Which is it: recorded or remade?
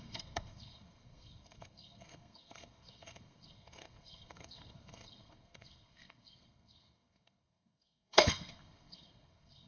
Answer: remade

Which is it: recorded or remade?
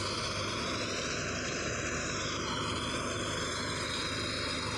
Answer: recorded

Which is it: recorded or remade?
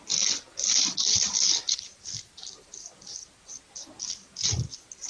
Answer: recorded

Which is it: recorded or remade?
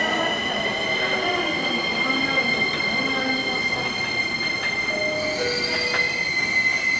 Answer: recorded